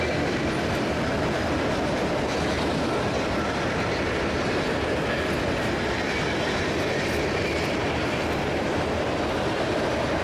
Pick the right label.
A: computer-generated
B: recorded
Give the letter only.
B